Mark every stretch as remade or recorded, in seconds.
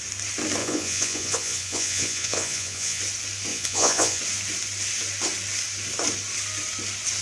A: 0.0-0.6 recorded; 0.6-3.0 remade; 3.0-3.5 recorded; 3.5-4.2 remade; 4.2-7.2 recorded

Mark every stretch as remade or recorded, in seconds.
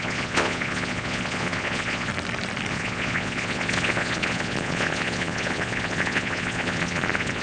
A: 0.0-2.1 remade; 2.1-2.7 recorded; 2.7-7.4 remade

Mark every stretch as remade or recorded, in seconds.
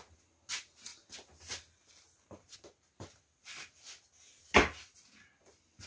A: 0.0-5.9 recorded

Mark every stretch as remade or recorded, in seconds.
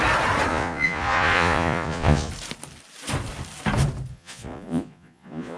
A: 0.0-0.5 recorded; 0.5-2.3 remade; 2.3-4.1 recorded; 4.1-5.6 remade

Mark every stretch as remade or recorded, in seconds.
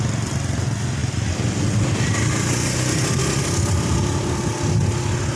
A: 0.0-5.4 recorded